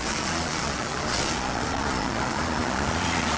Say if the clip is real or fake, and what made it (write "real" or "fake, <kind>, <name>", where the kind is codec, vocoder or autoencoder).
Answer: fake, vocoder, Vocos